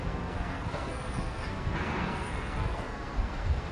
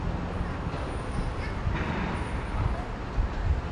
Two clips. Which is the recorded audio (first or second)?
second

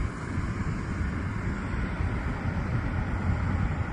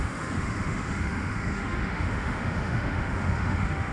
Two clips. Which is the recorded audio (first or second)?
first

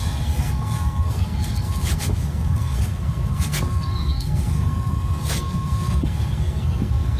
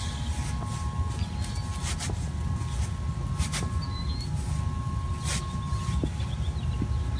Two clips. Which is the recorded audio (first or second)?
second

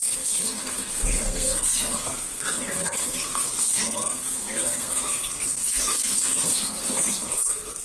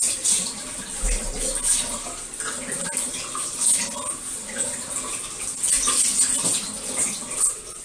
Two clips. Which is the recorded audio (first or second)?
second